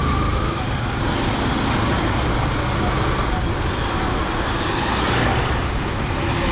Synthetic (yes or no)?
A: no